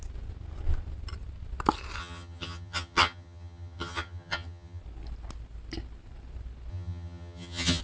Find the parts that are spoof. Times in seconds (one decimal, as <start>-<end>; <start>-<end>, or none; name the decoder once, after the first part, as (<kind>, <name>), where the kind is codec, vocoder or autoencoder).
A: 2.0-4.8 (vocoder, HiFi-GAN); 6.7-7.8